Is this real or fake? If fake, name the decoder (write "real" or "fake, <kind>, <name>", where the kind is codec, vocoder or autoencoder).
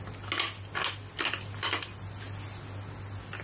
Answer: real